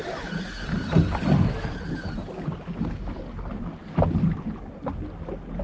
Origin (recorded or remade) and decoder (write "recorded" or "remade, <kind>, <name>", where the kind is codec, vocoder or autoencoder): recorded